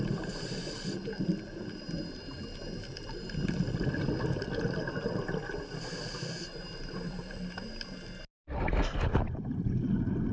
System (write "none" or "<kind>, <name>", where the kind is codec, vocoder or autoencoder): none